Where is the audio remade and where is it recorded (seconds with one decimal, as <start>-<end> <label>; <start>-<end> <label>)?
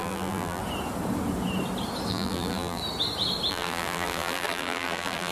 0.0-0.6 remade; 0.6-2.1 recorded; 2.1-2.8 remade; 2.8-3.5 recorded; 3.5-5.3 remade